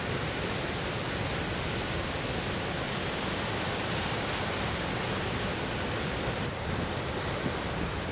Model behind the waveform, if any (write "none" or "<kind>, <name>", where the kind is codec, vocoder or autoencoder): none